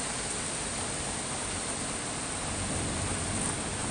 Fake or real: real